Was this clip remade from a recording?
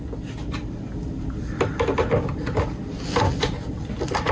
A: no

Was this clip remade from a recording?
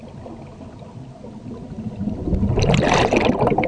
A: no